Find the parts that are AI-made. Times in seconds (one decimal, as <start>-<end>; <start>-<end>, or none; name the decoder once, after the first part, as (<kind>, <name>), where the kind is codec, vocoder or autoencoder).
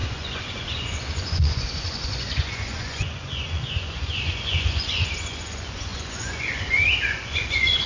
0.0-7.9 (vocoder, Vocos)